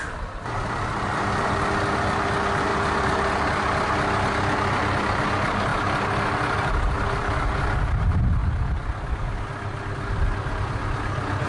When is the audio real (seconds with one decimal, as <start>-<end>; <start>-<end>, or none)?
0.0-2.7; 3.3-11.5